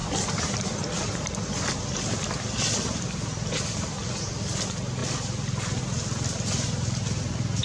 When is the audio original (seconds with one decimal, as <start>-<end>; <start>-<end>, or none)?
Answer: 4.1-7.6